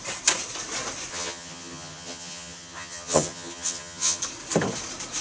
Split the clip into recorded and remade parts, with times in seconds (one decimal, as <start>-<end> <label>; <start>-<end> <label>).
0.0-1.1 recorded; 1.1-4.2 remade; 4.2-5.2 recorded